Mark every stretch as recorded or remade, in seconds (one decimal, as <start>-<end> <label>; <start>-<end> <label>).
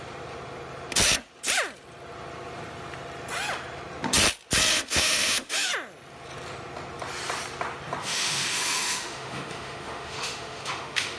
0.0-4.7 recorded; 4.7-5.7 remade; 5.7-8.0 recorded; 8.0-11.2 remade